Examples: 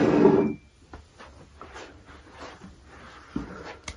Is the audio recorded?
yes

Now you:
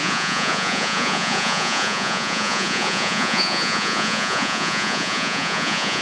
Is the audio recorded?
no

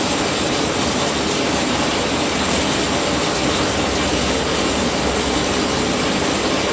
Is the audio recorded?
yes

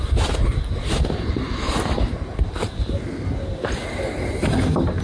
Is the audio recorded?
yes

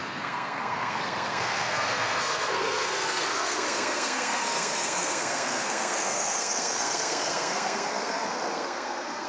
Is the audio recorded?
no